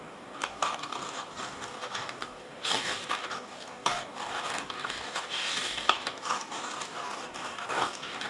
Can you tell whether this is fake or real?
fake